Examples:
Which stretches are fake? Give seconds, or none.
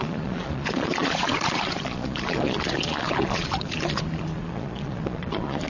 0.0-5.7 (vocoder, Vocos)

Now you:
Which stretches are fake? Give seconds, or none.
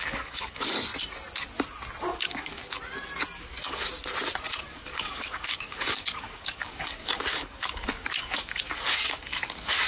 0.0-0.9 (codec, DAC); 2.1-2.6; 3.4-3.9; 4.6-9.9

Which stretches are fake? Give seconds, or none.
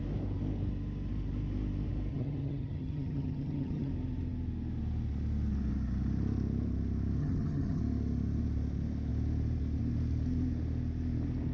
2.1-3.9 (vocoder, HiFi-GAN); 7.2-7.8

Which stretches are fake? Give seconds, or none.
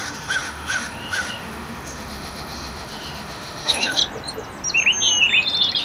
0.0-4.0 (autoencoder, DAC-VAE)